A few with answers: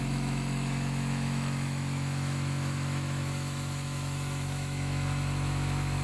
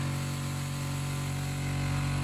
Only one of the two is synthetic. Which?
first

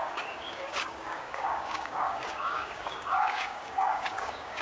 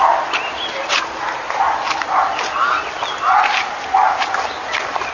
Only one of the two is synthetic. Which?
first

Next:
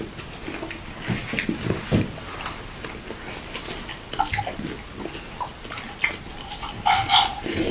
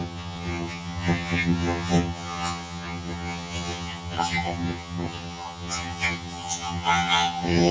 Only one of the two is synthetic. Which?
second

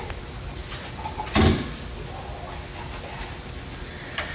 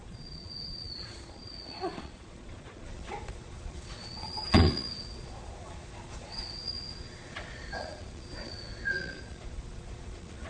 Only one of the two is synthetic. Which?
second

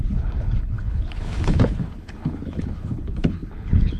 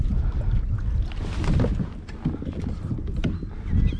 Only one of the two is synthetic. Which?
first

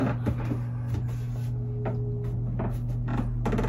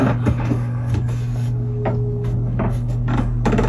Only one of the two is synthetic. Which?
second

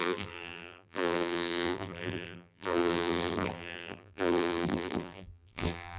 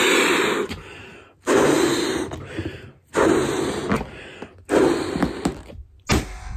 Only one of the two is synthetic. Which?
first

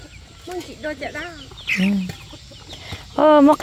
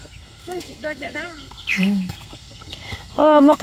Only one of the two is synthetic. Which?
second